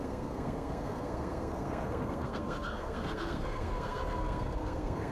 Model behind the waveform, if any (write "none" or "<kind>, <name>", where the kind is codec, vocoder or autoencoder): codec, SNAC